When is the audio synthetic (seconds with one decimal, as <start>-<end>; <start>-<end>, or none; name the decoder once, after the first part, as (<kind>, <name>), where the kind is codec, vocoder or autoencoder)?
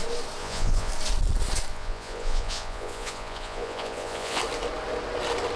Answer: 0.4-0.9 (vocoder, Vocos); 1.7-4.4